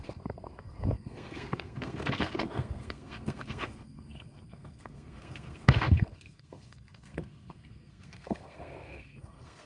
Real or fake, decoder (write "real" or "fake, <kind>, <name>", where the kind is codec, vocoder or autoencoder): fake, codec, SNAC